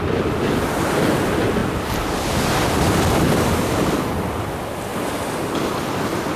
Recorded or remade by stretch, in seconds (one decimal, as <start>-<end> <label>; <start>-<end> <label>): 0.0-4.9 recorded; 4.9-5.5 remade; 5.5-6.4 recorded